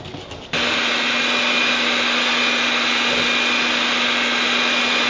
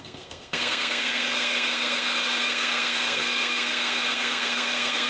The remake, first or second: second